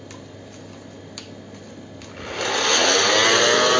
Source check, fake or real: real